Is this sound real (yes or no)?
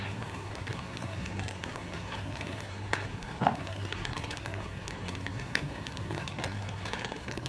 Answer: no